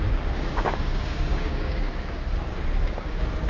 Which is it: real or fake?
fake